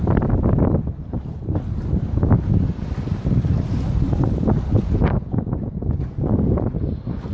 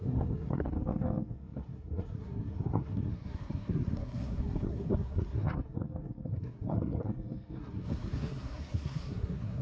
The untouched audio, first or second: first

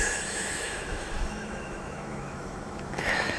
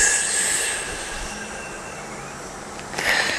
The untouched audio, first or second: second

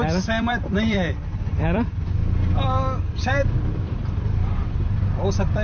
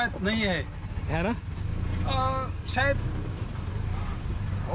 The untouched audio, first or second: second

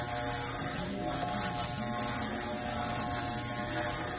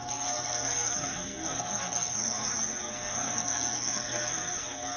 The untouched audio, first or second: first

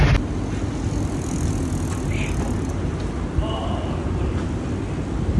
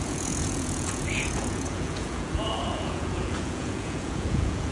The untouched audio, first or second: first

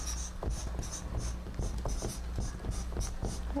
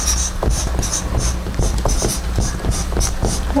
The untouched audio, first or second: first